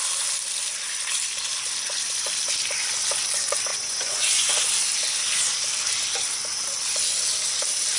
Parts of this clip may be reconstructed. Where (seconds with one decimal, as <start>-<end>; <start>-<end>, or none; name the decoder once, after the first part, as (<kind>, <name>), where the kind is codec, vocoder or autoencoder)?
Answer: 3.7-4.5 (vocoder, Vocos)